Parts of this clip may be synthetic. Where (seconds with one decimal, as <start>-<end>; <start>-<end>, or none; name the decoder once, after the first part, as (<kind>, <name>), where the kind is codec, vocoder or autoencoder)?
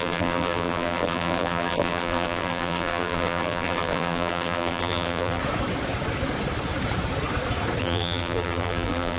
0.0-5.4 (vocoder, BigVGAN v2); 7.8-9.2